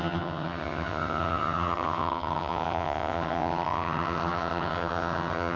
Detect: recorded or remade remade